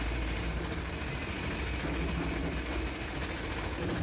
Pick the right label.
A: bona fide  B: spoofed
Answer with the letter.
A